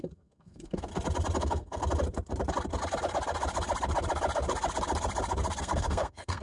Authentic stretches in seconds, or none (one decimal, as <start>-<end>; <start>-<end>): 0.9-1.4; 1.8-5.6